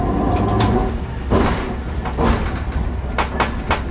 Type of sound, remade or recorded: recorded